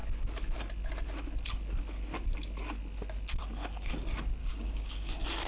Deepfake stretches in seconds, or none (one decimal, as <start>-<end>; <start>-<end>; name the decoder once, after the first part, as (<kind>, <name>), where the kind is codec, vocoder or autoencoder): 4.4-5.1 (codec, DAC)